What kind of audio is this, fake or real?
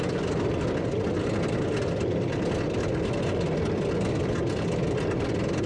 real